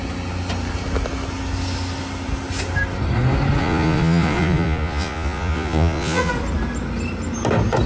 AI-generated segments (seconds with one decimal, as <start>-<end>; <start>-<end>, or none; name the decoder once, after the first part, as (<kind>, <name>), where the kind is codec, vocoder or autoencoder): 3.6-6.3 (vocoder, Vocos)

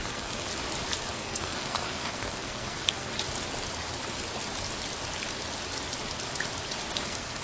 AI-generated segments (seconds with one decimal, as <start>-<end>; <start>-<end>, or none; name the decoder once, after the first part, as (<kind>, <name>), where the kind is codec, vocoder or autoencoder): 0.0-0.5 (codec, SNAC); 1.0-3.1; 7.0-7.4

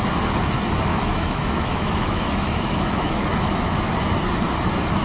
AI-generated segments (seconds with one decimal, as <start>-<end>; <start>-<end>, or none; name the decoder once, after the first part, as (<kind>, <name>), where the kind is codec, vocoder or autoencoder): 0.9-3.9 (autoencoder, DAC-VAE)

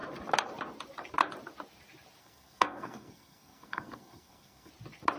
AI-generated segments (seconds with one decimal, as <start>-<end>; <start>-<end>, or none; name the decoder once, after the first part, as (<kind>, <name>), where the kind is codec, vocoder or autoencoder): 2.2-4.7 (codec, SNAC)

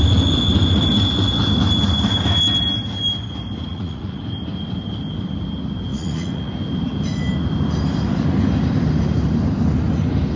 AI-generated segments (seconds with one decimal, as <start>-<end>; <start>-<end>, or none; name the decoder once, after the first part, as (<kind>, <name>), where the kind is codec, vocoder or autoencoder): 3.7-4.2 (vocoder, Vocos); 5.9-6.5

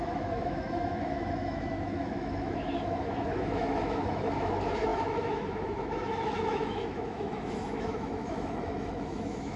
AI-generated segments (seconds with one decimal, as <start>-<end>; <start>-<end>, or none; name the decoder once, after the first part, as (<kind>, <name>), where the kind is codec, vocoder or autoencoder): 0.0-9.6 (autoencoder, DAC-VAE)

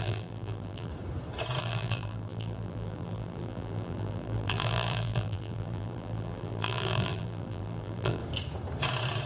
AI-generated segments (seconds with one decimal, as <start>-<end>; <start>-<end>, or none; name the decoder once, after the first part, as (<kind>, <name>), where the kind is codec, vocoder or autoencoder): 0.0-0.9 (vocoder, BigVGAN v2); 1.6-8.2

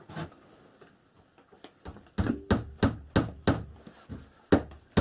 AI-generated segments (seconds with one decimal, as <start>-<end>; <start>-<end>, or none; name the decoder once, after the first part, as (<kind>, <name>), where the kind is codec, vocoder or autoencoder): none